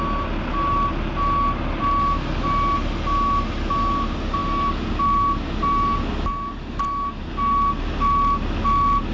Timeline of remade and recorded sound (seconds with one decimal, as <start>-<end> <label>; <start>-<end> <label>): 0.0-9.1 recorded